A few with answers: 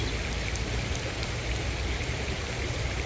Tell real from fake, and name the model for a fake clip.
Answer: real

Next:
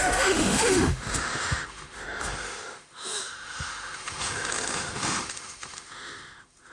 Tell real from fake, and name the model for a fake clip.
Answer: fake, autoencoder, DAC-VAE